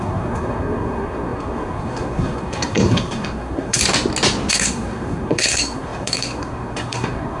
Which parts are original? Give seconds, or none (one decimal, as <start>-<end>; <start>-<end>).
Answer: 3.8-4.5